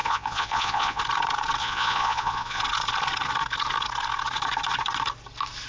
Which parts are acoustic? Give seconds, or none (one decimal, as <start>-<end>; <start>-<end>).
1.0-1.6; 2.6-5.7